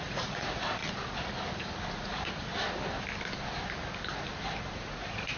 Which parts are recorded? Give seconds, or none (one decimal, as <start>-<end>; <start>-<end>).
0.8-1.9; 2.5-4.7